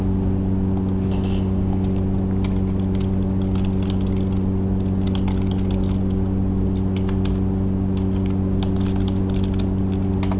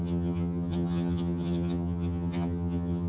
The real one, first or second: first